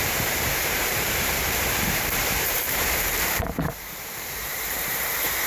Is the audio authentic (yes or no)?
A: no